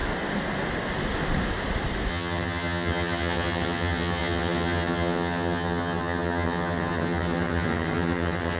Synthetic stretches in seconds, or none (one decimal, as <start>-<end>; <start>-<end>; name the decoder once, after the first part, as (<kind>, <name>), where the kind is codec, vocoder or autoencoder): 2.1-8.6 (vocoder, HiFi-GAN)